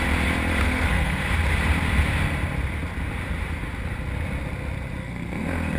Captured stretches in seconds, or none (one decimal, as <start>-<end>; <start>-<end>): 0.0-0.6; 1.2-5.0